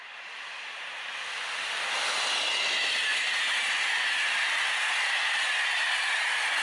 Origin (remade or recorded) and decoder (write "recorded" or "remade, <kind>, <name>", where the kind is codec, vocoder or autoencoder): recorded